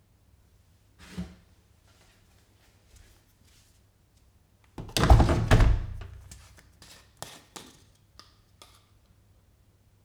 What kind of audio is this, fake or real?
real